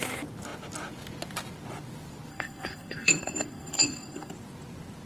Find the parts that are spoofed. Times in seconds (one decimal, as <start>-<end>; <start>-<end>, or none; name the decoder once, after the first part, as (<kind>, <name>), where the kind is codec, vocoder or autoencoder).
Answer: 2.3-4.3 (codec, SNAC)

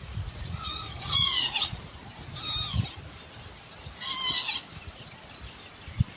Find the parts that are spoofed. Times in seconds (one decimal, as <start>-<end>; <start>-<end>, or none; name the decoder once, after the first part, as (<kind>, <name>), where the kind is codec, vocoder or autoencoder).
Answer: 0.0-2.0 (vocoder, Vocos); 5.7-6.2

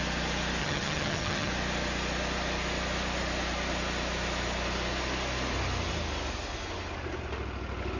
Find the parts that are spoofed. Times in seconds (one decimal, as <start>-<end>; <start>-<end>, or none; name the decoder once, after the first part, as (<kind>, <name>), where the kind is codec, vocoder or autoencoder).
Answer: 0.6-1.5 (vocoder, HiFi-GAN)

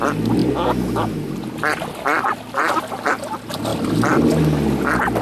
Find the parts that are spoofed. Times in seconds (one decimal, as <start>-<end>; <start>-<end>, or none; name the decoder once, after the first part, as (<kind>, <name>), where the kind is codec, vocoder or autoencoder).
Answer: none